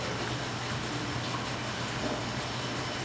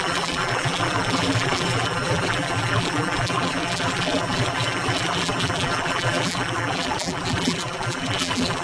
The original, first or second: first